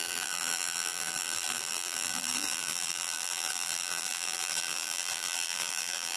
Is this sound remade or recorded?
remade